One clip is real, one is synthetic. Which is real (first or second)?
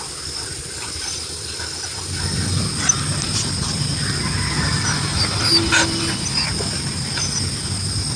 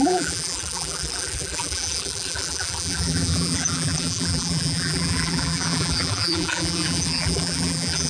first